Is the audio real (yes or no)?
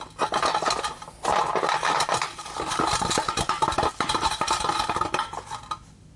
yes